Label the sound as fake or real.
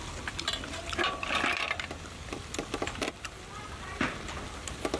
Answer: real